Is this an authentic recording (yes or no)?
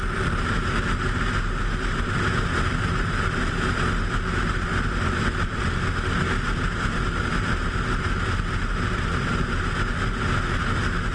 yes